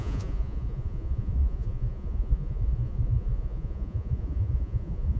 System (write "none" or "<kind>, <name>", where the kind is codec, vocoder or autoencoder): vocoder, Vocos